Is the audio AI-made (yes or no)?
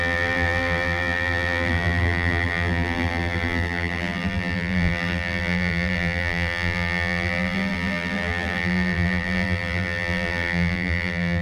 yes